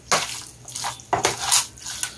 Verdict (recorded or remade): recorded